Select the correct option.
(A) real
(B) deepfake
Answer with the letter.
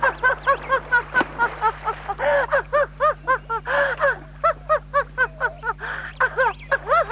A